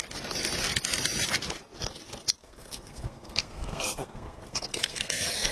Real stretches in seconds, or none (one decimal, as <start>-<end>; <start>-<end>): 0.0-2.4